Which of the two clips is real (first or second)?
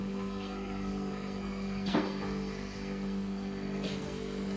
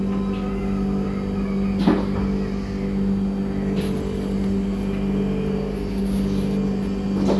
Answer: second